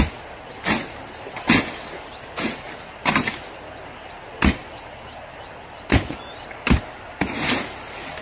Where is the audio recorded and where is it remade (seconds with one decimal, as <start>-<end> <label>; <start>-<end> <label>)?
0.0-8.2 recorded